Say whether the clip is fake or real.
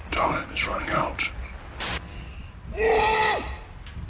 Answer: real